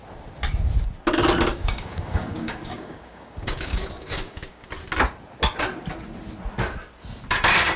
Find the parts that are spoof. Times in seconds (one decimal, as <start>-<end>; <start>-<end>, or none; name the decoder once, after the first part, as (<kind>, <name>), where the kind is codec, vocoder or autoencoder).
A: 1.5-4.7 (codec, DAC)